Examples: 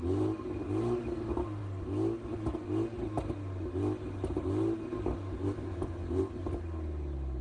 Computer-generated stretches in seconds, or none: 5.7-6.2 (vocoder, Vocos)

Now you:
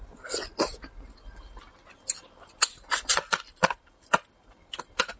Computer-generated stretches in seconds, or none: none

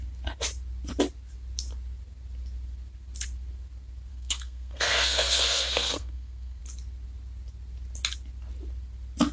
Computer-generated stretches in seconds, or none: 4.1-6.6 (codec, SNAC)